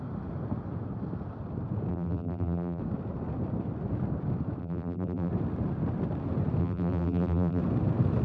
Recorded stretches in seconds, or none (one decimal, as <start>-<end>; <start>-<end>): 0.0-1.9; 2.8-4.6; 5.3-6.6; 7.6-8.2